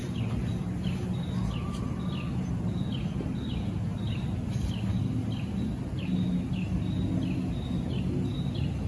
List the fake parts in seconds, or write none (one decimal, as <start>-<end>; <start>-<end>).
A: none